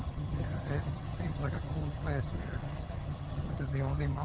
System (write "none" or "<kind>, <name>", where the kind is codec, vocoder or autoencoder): vocoder, HiFi-GAN